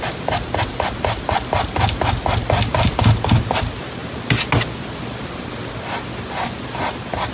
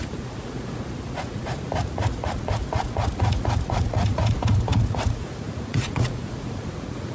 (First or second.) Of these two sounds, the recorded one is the first